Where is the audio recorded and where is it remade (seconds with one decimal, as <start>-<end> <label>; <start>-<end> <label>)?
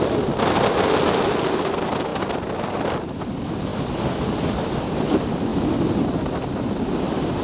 0.0-7.4 recorded